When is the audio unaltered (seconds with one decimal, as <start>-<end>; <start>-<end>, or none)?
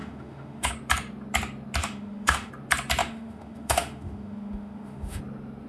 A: 0.7-1.8; 2.5-3.0; 5.2-5.7